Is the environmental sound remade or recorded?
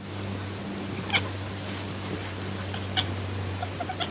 recorded